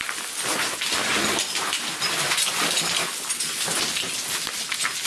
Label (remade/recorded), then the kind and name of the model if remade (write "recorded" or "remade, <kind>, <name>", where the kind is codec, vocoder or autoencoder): recorded